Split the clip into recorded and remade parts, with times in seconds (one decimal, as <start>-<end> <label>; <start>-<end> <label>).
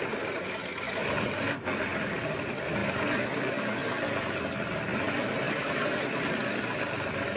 0.0-7.4 recorded